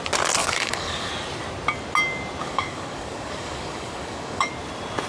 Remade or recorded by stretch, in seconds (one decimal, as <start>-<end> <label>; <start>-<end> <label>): 0.0-0.4 recorded; 0.4-1.1 remade; 1.1-2.4 recorded; 2.4-4.5 remade; 4.5-5.1 recorded